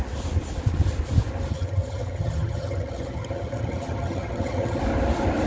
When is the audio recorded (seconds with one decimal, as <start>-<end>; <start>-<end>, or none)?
0.0-1.5; 4.8-5.5